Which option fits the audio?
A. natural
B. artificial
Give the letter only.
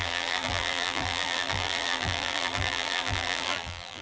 B